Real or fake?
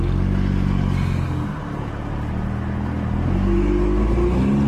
real